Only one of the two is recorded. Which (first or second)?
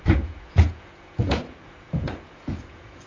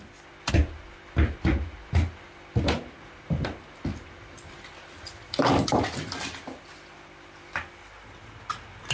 second